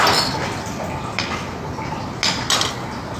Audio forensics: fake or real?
real